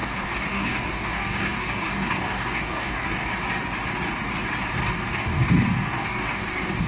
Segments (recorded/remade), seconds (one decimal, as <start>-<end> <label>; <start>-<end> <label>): 0.0-3.2 remade; 3.2-5.1 recorded; 5.1-6.9 remade